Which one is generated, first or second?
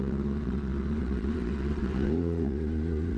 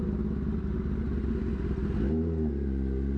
first